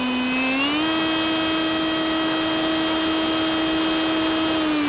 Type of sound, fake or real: real